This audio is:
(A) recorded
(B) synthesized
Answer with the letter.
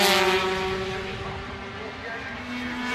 A